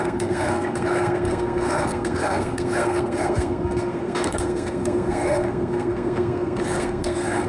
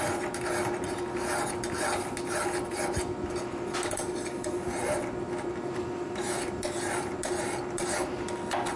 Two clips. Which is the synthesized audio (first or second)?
first